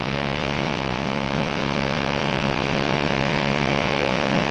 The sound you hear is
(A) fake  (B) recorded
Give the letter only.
A